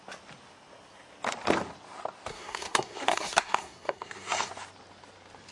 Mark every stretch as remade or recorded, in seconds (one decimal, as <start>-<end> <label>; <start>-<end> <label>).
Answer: 0.0-2.3 recorded; 2.3-4.5 remade; 4.5-5.5 recorded